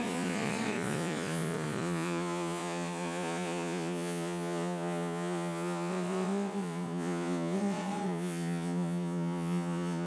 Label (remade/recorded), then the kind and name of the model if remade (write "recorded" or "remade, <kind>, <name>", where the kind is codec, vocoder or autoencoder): remade, vocoder, Vocos